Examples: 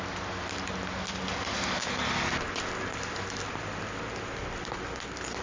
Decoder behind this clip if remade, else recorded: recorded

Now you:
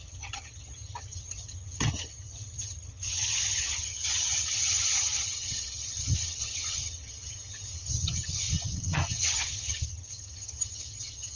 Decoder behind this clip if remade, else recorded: remade, vocoder, HiFi-GAN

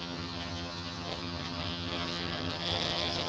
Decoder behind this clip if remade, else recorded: remade, vocoder, HiFi-GAN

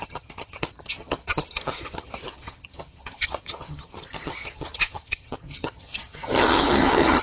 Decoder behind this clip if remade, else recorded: remade, vocoder, HiFi-GAN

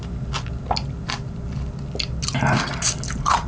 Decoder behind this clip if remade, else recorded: recorded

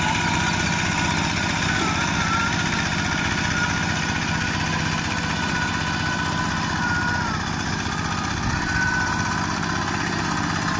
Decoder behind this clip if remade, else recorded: recorded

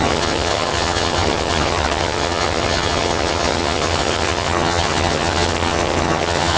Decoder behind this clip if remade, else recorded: remade, vocoder, HiFi-GAN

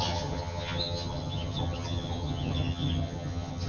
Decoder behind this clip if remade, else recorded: remade, vocoder, HiFi-GAN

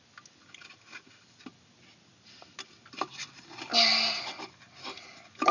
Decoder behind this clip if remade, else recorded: recorded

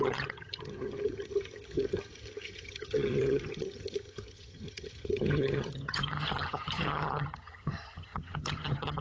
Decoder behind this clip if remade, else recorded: remade, vocoder, HiFi-GAN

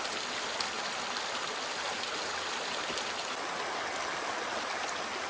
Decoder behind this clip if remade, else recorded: recorded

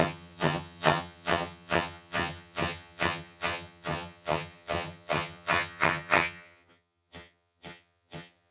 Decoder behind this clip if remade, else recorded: remade, vocoder, HiFi-GAN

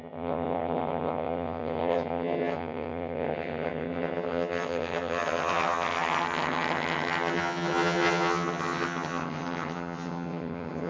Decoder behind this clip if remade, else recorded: remade, vocoder, HiFi-GAN